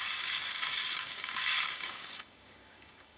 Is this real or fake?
fake